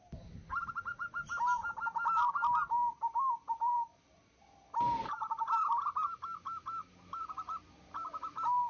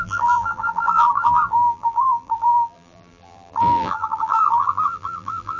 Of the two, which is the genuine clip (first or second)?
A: first